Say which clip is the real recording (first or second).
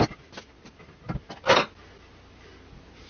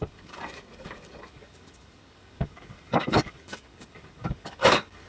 first